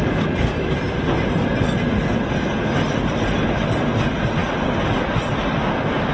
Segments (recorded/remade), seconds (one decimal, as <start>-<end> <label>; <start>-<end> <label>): 0.0-6.1 recorded